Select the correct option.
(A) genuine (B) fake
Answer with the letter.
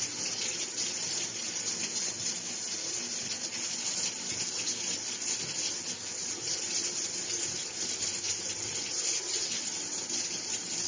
A